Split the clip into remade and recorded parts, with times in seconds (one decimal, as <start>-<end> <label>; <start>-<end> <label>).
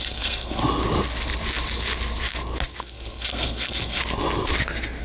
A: 0.0-0.6 remade; 0.6-2.8 recorded; 2.8-4.0 remade; 4.0-5.0 recorded